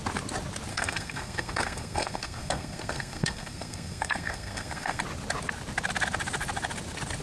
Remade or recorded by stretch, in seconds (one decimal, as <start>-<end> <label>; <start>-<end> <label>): 0.0-0.7 recorded; 0.7-5.0 remade; 5.0-7.2 recorded